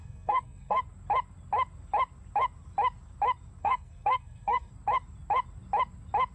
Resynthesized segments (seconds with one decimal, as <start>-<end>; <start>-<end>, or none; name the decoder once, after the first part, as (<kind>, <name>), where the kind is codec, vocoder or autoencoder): 0.0-0.8 (codec, SNAC); 3.6-4.7